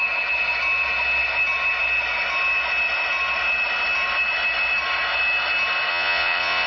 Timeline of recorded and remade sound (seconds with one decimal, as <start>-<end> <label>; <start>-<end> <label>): 0.0-5.9 recorded; 5.9-6.7 remade